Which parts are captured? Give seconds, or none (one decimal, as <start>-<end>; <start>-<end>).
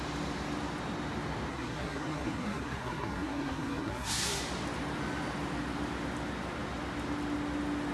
0.0-1.5; 4.4-7.9